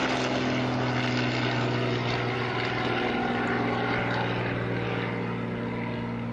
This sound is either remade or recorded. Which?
recorded